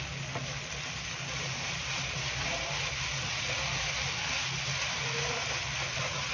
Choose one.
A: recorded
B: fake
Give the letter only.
A